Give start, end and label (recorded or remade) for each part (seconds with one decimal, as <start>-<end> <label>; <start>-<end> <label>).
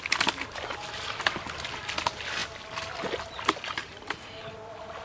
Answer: 0.0-3.8 recorded; 3.8-4.5 remade; 4.5-5.0 recorded